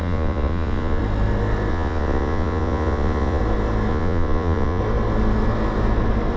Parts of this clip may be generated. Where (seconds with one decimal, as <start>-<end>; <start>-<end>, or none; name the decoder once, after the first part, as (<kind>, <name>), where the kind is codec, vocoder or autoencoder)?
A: 0.0-1.0 (vocoder, Vocos); 1.7-3.4; 3.9-4.8